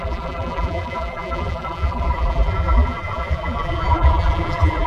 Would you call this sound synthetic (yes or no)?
yes